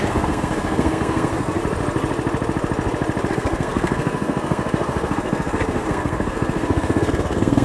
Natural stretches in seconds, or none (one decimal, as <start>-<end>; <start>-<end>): 1.6-3.3